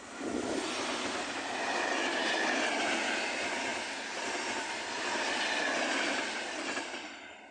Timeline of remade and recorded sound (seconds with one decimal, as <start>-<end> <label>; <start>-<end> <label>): 0.0-7.5 recorded